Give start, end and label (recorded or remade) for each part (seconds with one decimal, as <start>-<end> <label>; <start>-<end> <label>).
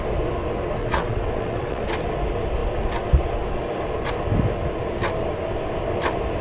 0.0-0.8 recorded; 0.8-1.8 remade; 1.8-6.4 recorded